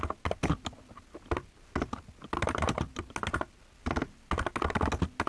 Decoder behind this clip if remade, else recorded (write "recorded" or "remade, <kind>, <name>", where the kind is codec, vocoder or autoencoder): recorded